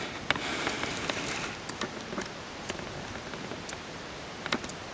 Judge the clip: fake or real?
real